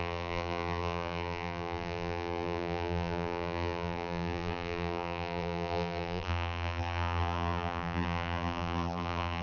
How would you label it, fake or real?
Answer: fake